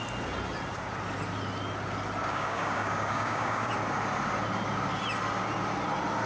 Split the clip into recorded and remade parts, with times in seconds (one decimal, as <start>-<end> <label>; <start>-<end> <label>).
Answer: 0.0-2.3 recorded; 2.3-3.7 remade; 3.7-6.3 recorded